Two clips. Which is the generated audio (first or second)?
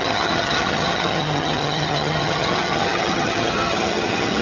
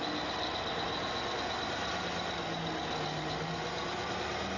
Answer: first